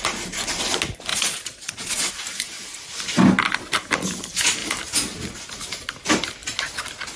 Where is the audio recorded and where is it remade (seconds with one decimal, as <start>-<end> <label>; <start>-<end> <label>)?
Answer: 0.0-1.1 recorded; 1.1-2.1 remade; 2.1-7.2 recorded